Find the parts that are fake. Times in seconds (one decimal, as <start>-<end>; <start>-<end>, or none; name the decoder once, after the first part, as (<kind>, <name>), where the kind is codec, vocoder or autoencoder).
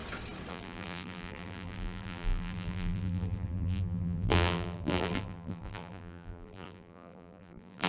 0.5-7.9 (vocoder, BigVGAN v2)